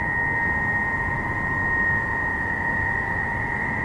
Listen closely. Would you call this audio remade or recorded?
recorded